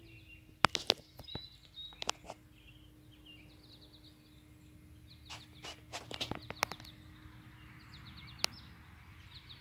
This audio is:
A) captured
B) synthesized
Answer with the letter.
A